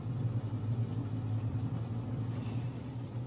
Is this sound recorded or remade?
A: remade